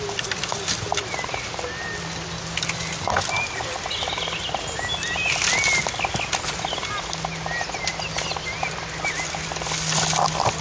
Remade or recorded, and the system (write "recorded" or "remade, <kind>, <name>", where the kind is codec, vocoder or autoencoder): recorded